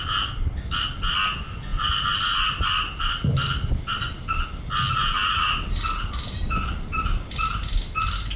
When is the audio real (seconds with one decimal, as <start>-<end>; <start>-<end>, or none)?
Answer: 0.0-8.4